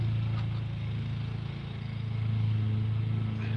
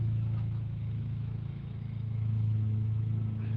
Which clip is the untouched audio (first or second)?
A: first